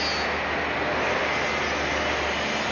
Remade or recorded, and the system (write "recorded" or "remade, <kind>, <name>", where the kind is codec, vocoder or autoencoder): recorded